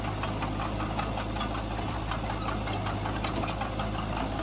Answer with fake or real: real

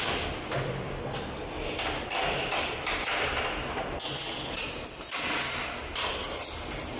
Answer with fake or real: real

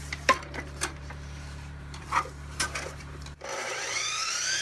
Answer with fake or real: fake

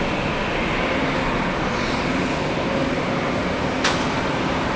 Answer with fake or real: real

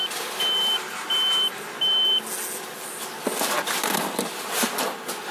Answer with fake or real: real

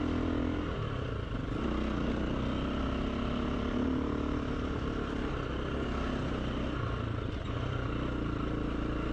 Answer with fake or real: real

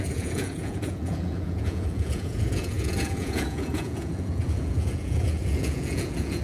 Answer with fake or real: fake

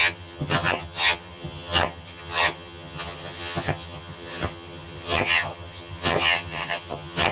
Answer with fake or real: fake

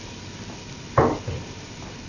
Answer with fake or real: real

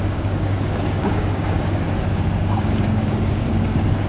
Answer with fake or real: fake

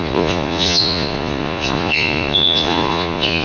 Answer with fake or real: fake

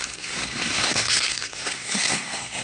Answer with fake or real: fake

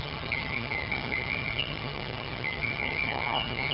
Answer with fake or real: fake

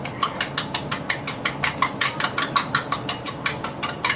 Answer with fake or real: real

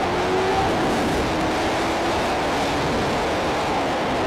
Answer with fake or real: real